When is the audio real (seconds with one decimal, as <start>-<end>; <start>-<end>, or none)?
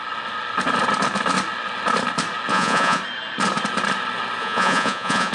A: 0.0-2.5; 3.0-4.4